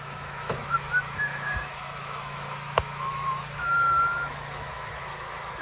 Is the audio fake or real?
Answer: fake